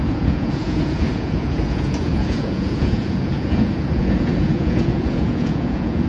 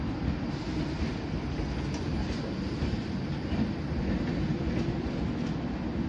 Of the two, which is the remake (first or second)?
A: first